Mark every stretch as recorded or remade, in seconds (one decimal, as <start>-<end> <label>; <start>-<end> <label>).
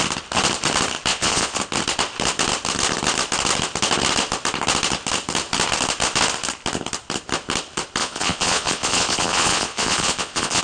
0.0-1.1 recorded; 1.1-1.6 remade; 1.6-8.0 recorded; 8.0-10.6 remade